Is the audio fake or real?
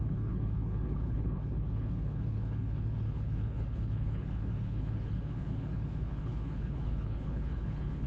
fake